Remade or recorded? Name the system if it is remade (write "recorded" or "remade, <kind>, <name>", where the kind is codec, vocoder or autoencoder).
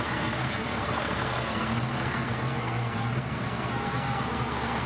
remade, codec, SNAC